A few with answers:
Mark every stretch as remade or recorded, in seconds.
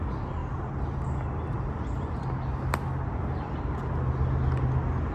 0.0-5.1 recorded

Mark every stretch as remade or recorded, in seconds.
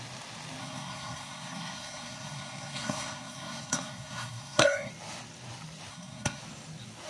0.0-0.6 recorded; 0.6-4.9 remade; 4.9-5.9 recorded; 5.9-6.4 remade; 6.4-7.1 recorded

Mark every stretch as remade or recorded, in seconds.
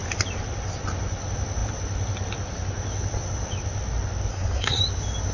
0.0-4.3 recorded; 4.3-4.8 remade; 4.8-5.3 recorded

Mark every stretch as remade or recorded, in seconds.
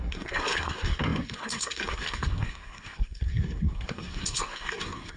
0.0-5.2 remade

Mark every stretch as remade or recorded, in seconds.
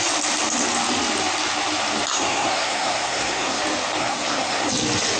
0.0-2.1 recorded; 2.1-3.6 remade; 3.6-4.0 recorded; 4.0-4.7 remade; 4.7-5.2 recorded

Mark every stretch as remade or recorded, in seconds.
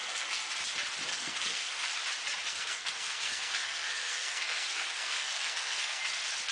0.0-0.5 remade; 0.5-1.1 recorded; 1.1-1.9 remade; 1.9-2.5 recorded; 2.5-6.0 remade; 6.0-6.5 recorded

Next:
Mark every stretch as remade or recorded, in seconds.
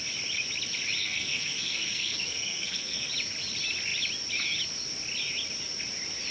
0.0-1.0 recorded; 1.0-3.1 remade; 3.1-6.3 recorded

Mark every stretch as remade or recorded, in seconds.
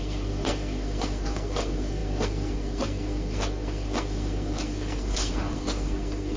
0.0-6.4 remade